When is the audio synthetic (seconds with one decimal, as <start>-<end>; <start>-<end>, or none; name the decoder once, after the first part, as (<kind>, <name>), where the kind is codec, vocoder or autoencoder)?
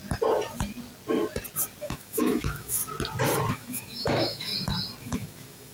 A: 1.8-2.8 (autoencoder, DAC-VAE); 3.5-4.5; 5.0-5.7